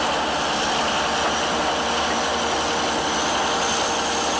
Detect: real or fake real